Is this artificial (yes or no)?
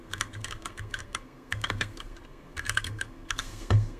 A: yes